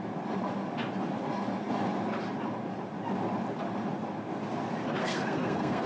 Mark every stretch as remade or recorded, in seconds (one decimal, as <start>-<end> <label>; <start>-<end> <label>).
0.0-5.0 recorded; 5.0-5.9 remade

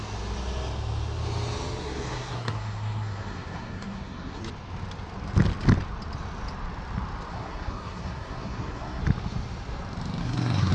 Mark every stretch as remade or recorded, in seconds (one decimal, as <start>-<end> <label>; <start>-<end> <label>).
0.0-1.8 recorded; 1.8-4.4 remade; 4.4-7.3 recorded; 7.3-9.0 remade; 9.0-10.2 recorded; 10.2-10.7 remade

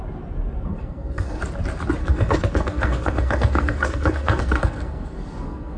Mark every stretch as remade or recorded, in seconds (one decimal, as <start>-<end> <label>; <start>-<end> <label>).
0.0-0.7 recorded; 0.7-1.4 remade; 1.4-2.0 recorded; 2.0-5.8 remade

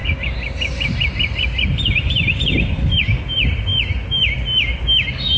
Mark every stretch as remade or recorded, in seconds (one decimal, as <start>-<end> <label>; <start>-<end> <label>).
0.0-5.4 recorded

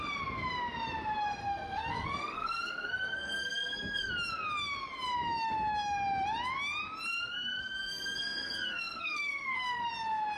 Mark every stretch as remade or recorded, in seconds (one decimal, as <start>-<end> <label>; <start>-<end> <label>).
0.0-1.4 recorded; 1.4-4.1 remade; 4.1-7.1 recorded; 7.1-9.9 remade; 9.9-10.4 recorded

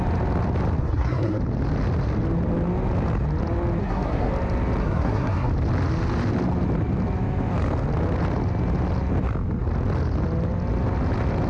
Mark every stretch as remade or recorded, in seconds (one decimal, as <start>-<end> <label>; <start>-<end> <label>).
0.0-0.8 recorded; 0.8-1.4 remade; 1.4-3.8 recorded; 3.8-4.3 remade; 4.3-4.8 recorded; 4.8-5.5 remade; 5.5-11.5 recorded